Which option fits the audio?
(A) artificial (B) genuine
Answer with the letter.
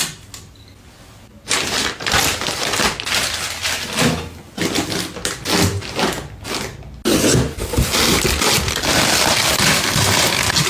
B